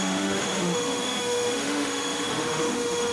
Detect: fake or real fake